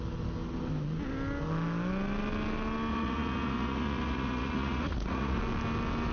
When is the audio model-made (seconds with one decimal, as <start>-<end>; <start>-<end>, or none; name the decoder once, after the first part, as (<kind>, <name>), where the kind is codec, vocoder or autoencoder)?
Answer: 2.9-5.4 (vocoder, Vocos)